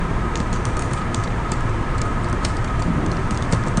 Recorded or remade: remade